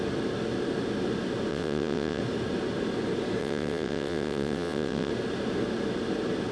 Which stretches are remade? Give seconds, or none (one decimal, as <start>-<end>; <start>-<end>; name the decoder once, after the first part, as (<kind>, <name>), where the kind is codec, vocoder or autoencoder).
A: 1.5-2.2 (vocoder, WaveNeXt); 3.4-5.1

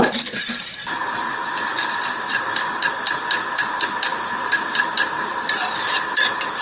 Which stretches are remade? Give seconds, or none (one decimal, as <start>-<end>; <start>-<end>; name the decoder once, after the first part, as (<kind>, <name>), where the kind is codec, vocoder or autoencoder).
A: none

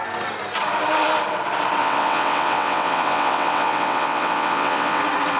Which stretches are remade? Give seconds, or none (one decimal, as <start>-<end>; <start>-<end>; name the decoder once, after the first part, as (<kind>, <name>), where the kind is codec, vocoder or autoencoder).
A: 1.8-5.0 (vocoder, WaveNeXt)

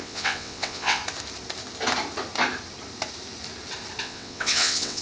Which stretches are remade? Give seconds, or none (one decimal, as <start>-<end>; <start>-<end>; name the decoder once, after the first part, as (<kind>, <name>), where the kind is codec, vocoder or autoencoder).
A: 0.0-1.0 (vocoder, WaveNeXt); 4.0-5.0

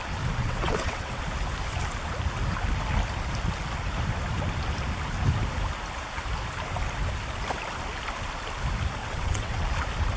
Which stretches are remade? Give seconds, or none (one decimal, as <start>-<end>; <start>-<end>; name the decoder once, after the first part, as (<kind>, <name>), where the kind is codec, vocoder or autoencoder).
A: 0.4-1.2 (vocoder, WaveNeXt); 9.0-9.7

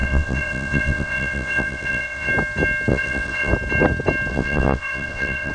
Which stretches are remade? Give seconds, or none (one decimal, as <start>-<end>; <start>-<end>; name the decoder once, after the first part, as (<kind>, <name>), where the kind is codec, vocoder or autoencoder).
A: 0.0-2.3 (vocoder, WaveNeXt); 2.9-3.5; 4.3-5.5

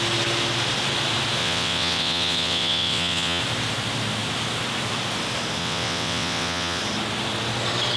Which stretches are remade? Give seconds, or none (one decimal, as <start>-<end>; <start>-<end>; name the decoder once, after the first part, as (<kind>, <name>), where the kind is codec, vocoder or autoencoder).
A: 1.4-3.4 (vocoder, WaveNeXt); 5.6-6.8